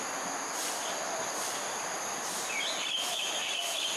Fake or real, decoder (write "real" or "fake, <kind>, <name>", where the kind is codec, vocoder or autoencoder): real